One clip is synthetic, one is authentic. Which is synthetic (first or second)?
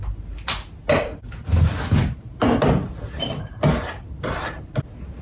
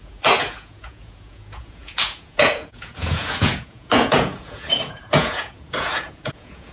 second